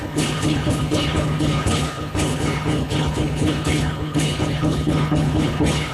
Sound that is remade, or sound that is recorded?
remade